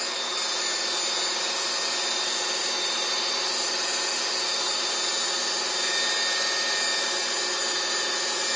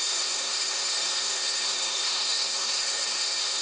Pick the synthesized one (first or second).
second